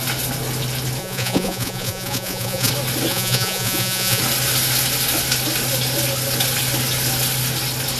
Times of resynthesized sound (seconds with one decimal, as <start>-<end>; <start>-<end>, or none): 1.0-2.7; 3.1-4.2